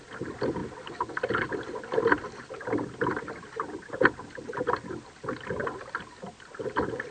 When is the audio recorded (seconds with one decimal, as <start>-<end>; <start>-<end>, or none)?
0.0-7.1